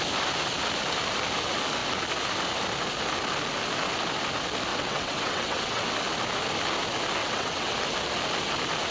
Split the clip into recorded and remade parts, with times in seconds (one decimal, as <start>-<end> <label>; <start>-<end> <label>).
0.0-4.7 recorded; 4.7-5.9 remade; 5.9-7.2 recorded; 7.2-7.7 remade; 7.7-8.9 recorded